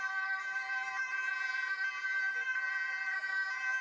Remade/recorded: recorded